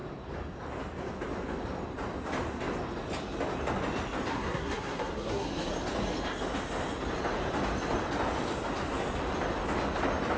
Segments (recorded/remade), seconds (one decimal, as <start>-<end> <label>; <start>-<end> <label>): 0.0-4.3 recorded; 4.3-5.7 remade; 5.7-10.4 recorded